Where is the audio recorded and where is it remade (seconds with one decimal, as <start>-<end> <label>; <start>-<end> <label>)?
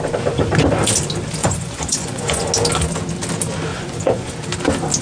0.0-1.4 recorded; 1.4-2.5 remade; 2.5-3.7 recorded; 3.7-4.3 remade; 4.3-5.0 recorded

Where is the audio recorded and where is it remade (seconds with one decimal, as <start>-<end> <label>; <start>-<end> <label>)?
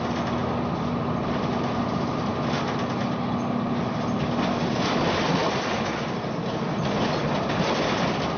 0.0-8.4 recorded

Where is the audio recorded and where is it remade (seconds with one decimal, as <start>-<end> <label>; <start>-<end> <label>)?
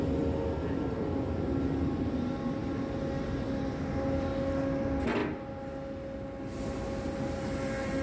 0.0-8.0 recorded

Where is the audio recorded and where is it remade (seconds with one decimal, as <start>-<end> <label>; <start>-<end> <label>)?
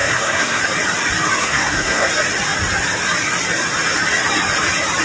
0.0-0.6 remade; 0.6-1.4 recorded; 1.4-2.1 remade; 2.1-5.0 recorded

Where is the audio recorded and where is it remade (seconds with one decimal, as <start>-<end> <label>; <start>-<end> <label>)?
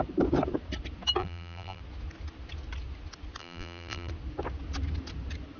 0.0-1.2 recorded; 1.2-1.8 remade; 1.8-3.4 recorded; 3.4-4.1 remade; 4.1-5.6 recorded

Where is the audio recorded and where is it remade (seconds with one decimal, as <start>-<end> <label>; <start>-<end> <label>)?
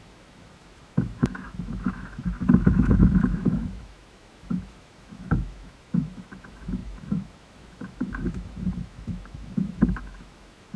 0.0-10.8 remade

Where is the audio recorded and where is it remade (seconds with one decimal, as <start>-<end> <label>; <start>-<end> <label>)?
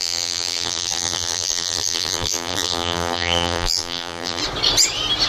0.0-4.4 remade; 4.4-5.3 recorded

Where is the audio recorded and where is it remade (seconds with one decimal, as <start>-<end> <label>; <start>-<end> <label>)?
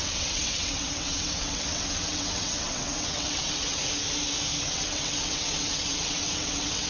0.0-3.8 remade; 3.8-4.6 recorded; 4.6-6.9 remade